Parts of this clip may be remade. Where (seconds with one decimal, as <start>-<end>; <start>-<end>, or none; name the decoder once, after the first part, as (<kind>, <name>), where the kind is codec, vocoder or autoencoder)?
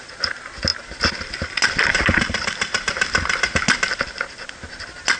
none